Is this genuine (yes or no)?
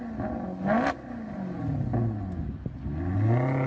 yes